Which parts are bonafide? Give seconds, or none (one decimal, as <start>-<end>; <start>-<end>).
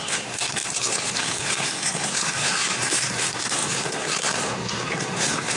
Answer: none